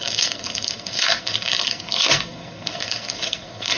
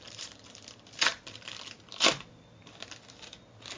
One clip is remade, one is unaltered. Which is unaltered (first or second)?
second